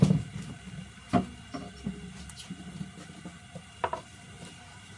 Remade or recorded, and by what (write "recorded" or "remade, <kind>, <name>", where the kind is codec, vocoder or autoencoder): recorded